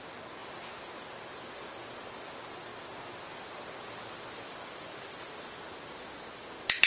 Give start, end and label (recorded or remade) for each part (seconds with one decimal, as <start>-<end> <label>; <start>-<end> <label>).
0.0-6.9 recorded